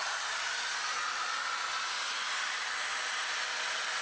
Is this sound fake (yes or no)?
no